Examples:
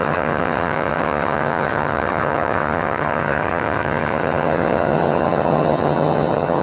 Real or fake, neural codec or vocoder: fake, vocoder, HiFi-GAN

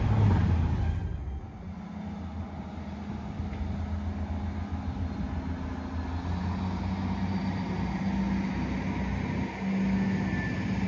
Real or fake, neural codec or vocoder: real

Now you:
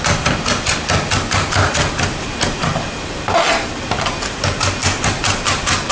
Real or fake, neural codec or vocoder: real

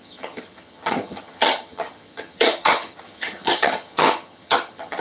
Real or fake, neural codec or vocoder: fake, vocoder, HiFi-GAN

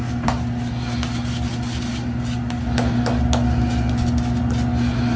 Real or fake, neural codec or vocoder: real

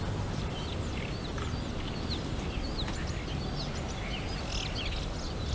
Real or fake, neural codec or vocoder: real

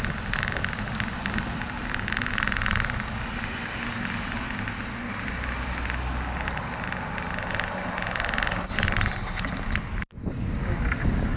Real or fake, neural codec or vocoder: real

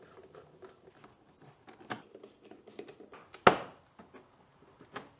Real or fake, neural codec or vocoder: real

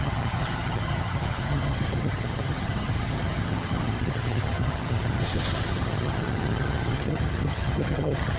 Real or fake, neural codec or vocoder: fake, vocoder, HiFi-GAN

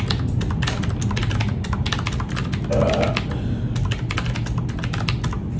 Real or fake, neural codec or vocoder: real